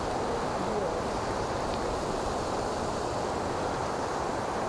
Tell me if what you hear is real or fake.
real